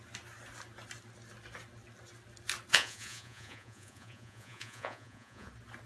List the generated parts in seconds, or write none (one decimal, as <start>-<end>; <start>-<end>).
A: 2.7-5.5

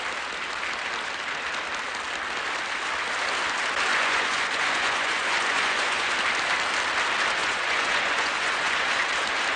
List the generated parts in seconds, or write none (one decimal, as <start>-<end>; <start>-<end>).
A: 3.9-6.1; 7.4-9.1

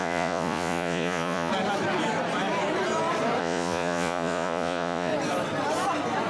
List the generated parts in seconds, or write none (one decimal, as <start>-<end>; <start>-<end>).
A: 0.0-1.5; 3.4-5.1

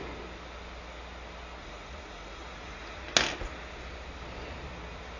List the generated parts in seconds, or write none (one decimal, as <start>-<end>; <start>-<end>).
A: 1.6-3.0